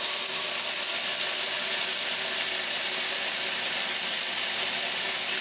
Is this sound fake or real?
real